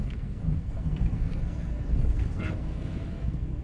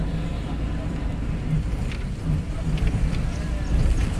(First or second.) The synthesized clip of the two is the first